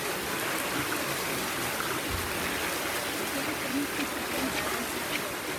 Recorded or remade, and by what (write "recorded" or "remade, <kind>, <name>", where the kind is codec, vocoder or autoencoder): recorded